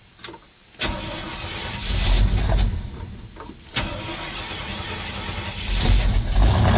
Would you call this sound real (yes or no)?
yes